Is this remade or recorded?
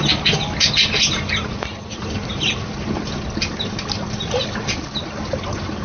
recorded